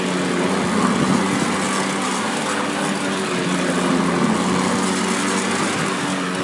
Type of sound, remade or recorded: recorded